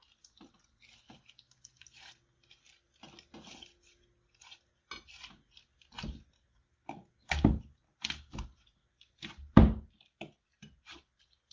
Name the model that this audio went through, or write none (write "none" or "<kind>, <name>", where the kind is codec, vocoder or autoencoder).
none